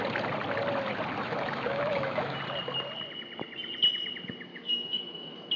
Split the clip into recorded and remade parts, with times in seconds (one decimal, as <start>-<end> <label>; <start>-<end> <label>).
0.0-1.2 recorded; 1.2-2.4 remade; 2.4-4.5 recorded; 4.5-5.6 remade